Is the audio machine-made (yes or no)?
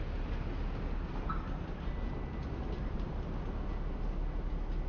no